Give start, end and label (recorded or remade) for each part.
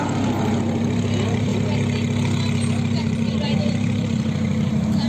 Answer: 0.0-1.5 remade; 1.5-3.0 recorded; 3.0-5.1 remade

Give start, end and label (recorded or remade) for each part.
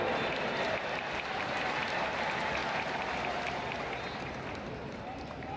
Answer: 0.0-2.6 recorded; 2.6-3.8 remade; 3.8-5.6 recorded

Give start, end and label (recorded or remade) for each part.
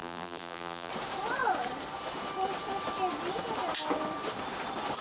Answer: 0.0-0.9 remade; 0.9-5.0 recorded